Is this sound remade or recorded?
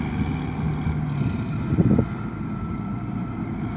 recorded